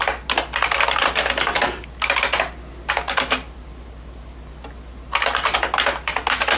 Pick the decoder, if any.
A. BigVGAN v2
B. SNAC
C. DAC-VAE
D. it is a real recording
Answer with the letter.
D